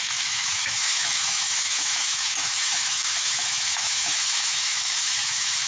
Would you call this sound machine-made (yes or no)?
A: yes